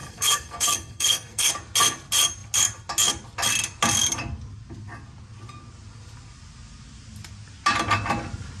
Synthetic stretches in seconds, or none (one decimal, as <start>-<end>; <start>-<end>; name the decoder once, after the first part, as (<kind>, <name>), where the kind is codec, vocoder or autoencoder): 0.0-1.5 (codec, SNAC)